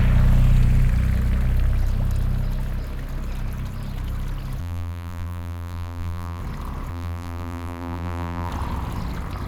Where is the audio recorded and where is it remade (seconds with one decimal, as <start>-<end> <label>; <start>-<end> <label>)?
0.0-4.6 recorded; 4.6-6.4 remade; 6.4-6.9 recorded; 6.9-8.5 remade; 8.5-9.5 recorded